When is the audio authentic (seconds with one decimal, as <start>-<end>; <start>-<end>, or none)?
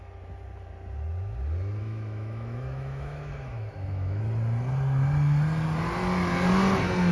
0.0-1.8; 4.2-7.1